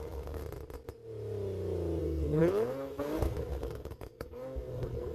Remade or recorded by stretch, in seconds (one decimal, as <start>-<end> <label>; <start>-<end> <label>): 0.0-0.4 remade; 0.4-2.0 recorded; 2.0-5.1 remade